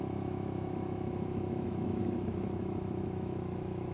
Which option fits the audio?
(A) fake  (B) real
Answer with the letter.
A